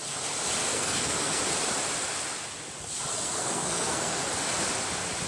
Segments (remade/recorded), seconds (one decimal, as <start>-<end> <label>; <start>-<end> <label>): 0.0-0.7 recorded; 0.7-1.4 remade; 1.4-3.1 recorded; 3.1-4.3 remade; 4.3-5.3 recorded